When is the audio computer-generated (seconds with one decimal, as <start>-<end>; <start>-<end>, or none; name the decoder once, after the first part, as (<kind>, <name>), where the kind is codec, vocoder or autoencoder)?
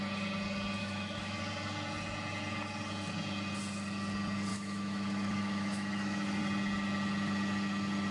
0.8-1.4 (autoencoder, DAC-VAE); 4.5-6.4